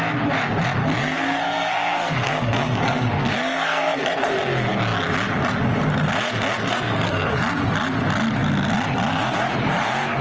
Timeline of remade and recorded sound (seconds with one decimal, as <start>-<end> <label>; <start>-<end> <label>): 0.0-0.8 recorded; 0.8-4.3 remade; 4.3-6.6 recorded; 6.6-7.3 remade; 7.3-10.2 recorded